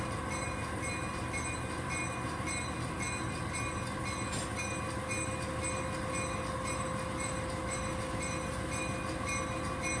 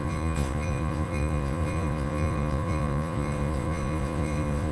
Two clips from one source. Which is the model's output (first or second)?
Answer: second